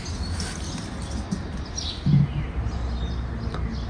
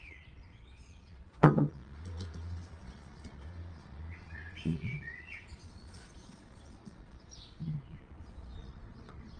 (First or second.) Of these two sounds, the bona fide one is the first